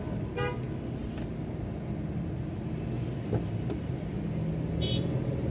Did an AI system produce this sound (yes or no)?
no